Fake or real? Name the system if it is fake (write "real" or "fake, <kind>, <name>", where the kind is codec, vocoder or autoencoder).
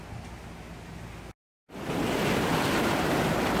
real